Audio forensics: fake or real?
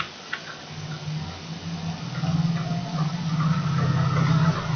real